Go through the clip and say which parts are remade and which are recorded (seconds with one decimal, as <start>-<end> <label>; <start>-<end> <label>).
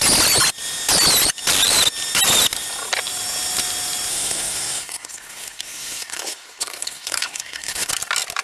0.0-4.1 recorded; 4.1-7.9 remade; 7.9-8.4 recorded